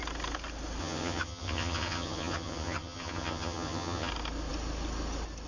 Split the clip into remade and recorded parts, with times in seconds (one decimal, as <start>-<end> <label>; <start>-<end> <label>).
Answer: 0.0-0.8 recorded; 0.8-4.1 remade; 4.1-5.5 recorded